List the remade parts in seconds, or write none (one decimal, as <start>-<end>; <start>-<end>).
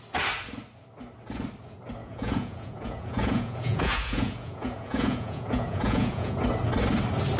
2.0-6.4